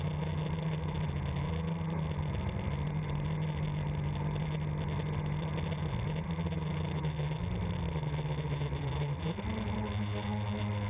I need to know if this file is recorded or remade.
recorded